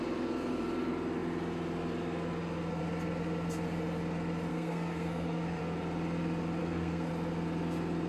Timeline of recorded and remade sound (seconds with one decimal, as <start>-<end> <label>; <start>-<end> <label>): 0.0-4.5 recorded; 4.5-5.6 remade; 5.6-6.6 recorded; 6.6-7.1 remade; 7.1-8.1 recorded